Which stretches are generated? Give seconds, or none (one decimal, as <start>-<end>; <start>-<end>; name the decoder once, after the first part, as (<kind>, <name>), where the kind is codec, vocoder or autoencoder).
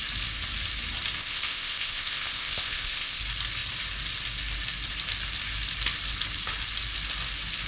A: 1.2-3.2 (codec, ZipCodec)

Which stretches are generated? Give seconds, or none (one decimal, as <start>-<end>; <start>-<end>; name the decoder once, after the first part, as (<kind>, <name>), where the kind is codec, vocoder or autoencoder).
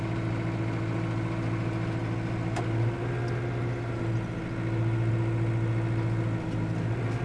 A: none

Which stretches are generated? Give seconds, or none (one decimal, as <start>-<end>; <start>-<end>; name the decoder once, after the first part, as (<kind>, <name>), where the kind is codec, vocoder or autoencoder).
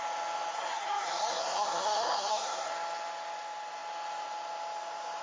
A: 0.5-2.7 (codec, SNAC)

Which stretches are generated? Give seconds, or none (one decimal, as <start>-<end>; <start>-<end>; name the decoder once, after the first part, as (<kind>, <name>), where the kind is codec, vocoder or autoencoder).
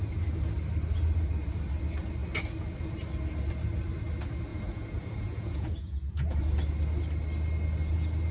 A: 4.5-6.4 (vocoder, Vocos)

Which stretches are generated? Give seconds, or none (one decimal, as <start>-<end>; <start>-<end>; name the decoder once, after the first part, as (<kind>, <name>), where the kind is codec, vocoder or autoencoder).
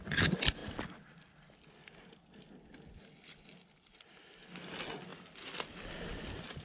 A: none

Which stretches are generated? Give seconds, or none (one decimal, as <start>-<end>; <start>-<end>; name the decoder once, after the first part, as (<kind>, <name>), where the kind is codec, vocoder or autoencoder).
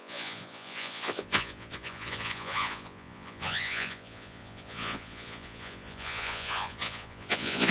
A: 0.0-7.7 (vocoder, Vocos)